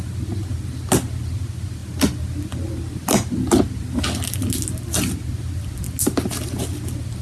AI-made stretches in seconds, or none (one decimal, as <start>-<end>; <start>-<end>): none